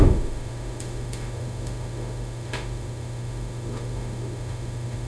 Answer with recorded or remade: remade